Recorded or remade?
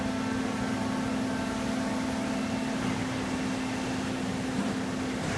recorded